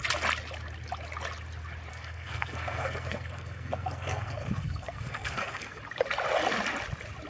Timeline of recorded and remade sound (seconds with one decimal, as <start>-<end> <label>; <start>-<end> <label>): 0.0-1.9 recorded; 1.9-5.8 remade; 5.8-7.3 recorded

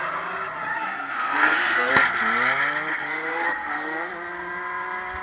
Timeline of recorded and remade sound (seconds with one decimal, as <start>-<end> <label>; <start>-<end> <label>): 0.0-0.7 recorded; 0.7-1.9 remade; 1.9-2.9 recorded; 2.9-4.1 remade; 4.1-5.2 recorded

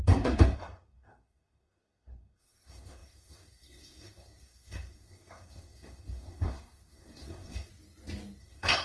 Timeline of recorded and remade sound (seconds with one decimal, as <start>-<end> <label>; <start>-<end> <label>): 0.0-7.7 remade; 7.7-8.4 recorded; 8.4-8.8 remade

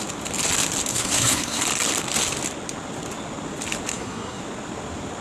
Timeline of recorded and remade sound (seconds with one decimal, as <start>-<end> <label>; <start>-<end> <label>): 0.0-0.9 recorded; 0.9-1.6 remade; 1.6-3.9 recorded; 3.9-4.4 remade; 4.4-5.2 recorded

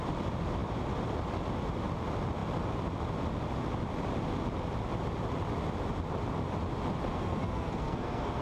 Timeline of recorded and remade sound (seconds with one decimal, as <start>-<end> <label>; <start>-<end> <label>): 0.0-7.1 recorded; 7.1-8.4 remade

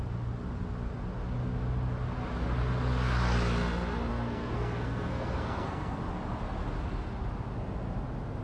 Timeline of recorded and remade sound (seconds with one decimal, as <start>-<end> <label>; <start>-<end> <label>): 0.0-4.1 recorded; 4.1-6.0 remade; 6.0-8.4 recorded

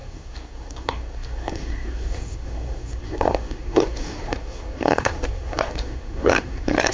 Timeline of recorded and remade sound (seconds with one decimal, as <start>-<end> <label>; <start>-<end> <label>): 0.0-6.9 remade